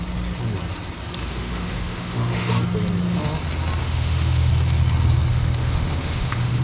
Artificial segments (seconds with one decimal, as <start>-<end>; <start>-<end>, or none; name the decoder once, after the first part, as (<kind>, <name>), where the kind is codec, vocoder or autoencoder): 1.2-2.5 (autoencoder, DAC-VAE); 3.8-4.5; 5.3-6.6